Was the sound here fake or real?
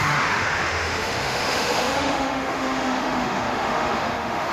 fake